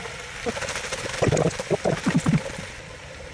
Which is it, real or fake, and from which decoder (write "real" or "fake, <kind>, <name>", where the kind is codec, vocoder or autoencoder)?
real